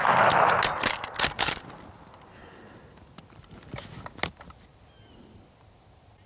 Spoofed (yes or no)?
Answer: no